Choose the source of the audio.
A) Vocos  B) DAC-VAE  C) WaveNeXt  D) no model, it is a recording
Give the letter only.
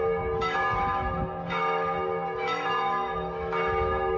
B